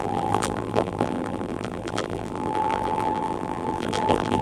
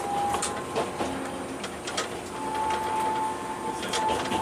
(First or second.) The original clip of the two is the second